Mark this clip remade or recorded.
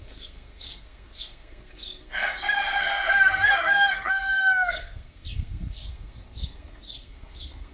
remade